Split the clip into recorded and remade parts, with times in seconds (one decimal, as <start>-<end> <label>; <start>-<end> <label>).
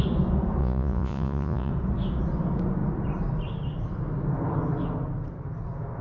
0.0-0.6 recorded; 0.6-1.7 remade; 1.7-6.0 recorded